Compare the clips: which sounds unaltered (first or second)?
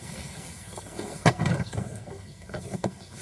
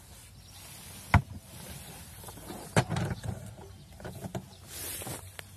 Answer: second